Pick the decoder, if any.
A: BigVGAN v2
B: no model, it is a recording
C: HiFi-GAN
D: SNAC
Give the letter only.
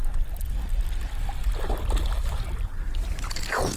B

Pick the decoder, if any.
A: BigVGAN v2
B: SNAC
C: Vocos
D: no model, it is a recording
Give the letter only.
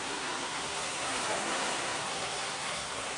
B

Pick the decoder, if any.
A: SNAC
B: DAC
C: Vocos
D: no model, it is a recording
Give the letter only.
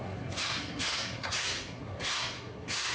A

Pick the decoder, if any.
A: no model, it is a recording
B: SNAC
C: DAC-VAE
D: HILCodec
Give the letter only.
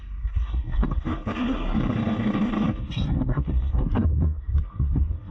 B